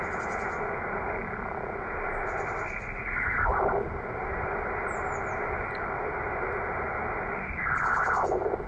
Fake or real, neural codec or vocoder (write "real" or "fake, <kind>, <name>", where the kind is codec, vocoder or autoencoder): real